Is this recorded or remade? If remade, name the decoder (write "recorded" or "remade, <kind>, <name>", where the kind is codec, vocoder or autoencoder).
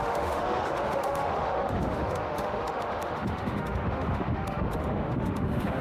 remade, autoencoder, DAC-VAE